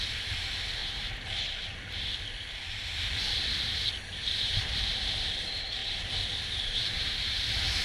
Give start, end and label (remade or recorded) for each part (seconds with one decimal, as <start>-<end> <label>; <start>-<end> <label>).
0.0-0.8 remade; 0.8-4.0 recorded; 4.0-5.8 remade; 5.8-6.4 recorded; 6.4-7.8 remade

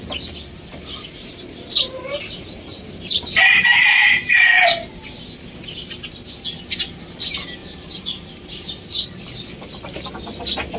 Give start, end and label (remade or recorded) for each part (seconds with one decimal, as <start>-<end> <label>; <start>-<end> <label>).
0.0-0.7 recorded; 0.7-4.6 remade; 4.6-10.8 recorded

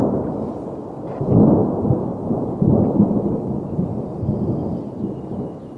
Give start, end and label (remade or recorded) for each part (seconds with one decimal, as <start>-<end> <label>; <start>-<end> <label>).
0.0-2.1 recorded; 2.1-4.0 remade; 4.0-5.8 recorded

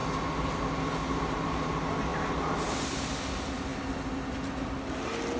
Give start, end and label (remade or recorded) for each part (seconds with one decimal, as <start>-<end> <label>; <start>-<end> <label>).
0.0-2.1 recorded; 2.1-2.7 remade; 2.7-5.4 recorded

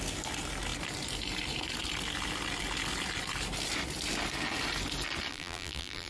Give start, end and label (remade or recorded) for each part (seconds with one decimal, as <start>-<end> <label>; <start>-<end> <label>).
0.0-5.3 recorded; 5.3-6.1 remade

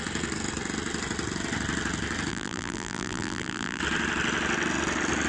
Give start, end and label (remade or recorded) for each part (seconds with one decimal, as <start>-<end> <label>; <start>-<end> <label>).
0.0-2.3 recorded; 2.3-3.8 remade; 3.8-5.3 recorded